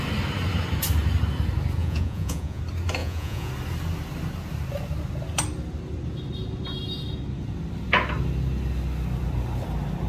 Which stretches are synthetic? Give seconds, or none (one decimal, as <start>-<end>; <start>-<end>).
1.8-2.6; 3.0-3.5